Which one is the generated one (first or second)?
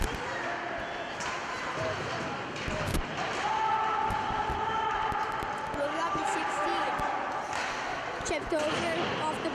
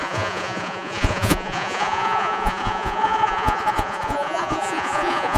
second